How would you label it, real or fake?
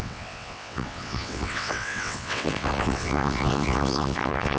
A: fake